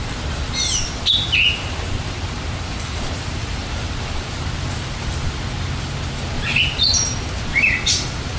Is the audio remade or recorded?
recorded